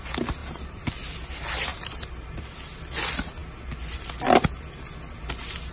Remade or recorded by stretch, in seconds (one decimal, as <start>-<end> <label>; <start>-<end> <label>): 0.0-0.4 recorded; 0.4-0.9 remade; 0.9-5.7 recorded